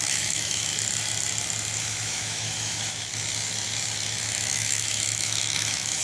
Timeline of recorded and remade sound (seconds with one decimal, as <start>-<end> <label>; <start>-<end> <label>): 0.0-0.7 remade; 0.7-1.8 recorded; 1.8-3.1 remade; 3.1-4.2 recorded; 4.2-6.0 remade